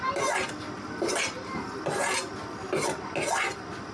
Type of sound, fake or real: real